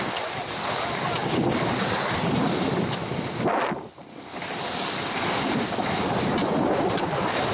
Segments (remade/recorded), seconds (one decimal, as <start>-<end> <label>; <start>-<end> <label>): 0.0-7.5 recorded